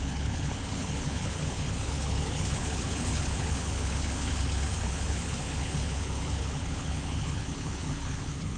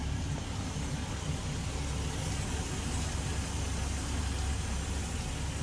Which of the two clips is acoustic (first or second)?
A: second